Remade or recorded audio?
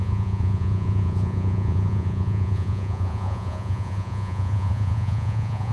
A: remade